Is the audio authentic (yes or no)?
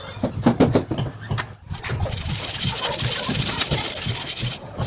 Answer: yes